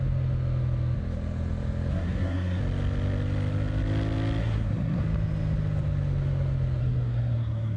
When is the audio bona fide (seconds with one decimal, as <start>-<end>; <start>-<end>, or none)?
0.0-1.9; 2.6-4.4; 5.0-6.8